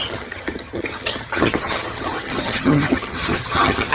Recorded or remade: remade